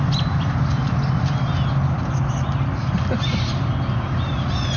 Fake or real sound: real